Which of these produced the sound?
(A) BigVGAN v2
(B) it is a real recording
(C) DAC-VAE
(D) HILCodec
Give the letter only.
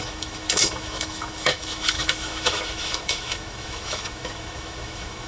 C